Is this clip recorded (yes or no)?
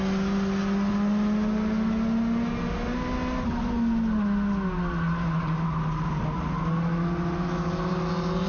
yes